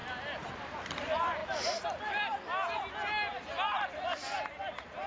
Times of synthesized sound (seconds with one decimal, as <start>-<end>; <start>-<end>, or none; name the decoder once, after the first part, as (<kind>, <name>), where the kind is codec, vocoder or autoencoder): none